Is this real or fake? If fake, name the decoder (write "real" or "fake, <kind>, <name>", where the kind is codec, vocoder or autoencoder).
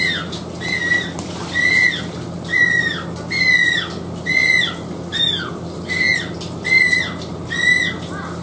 real